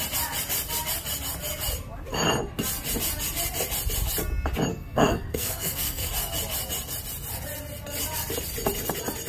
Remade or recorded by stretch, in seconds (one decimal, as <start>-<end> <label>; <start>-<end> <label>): 0.0-4.7 recorded; 4.7-6.1 remade; 6.1-9.3 recorded